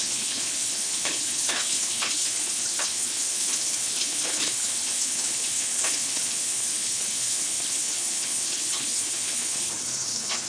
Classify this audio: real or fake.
fake